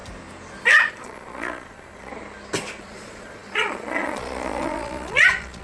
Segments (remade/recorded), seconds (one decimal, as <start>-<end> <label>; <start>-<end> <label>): 0.0-0.9 recorded; 0.9-2.1 remade; 2.1-2.8 recorded; 2.8-5.6 remade